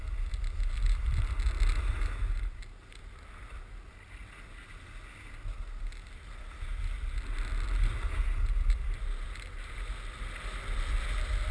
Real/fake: real